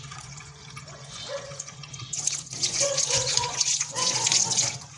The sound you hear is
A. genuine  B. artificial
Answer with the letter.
B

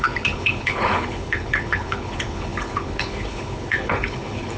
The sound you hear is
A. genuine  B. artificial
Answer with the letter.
B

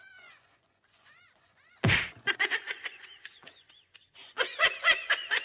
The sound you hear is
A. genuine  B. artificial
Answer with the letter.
B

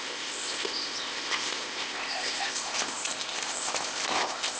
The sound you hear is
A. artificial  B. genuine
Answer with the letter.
A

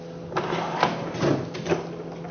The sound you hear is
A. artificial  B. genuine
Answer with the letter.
B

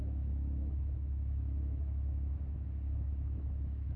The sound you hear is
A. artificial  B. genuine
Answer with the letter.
A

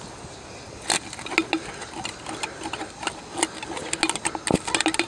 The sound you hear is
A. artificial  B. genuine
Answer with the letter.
B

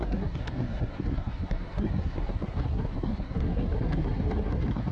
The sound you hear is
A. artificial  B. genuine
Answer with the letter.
A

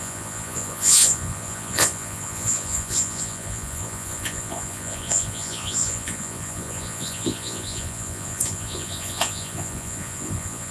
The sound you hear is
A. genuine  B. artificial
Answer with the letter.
B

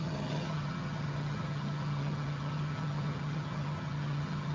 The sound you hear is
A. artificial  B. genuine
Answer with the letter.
A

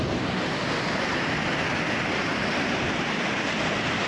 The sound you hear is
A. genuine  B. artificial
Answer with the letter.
A